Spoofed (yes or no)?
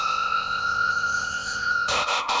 yes